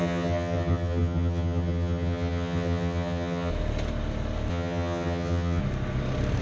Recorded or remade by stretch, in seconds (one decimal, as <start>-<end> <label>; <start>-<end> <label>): 0.0-3.5 remade; 3.5-4.5 recorded; 4.5-5.6 remade; 5.6-6.4 recorded